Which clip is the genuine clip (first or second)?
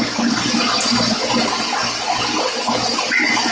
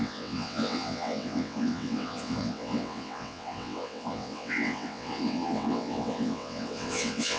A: first